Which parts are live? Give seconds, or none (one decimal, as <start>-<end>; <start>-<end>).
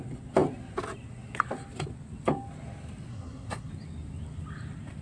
0.0-3.1; 3.7-5.0